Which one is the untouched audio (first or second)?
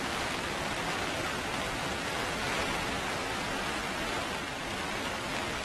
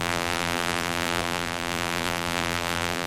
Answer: first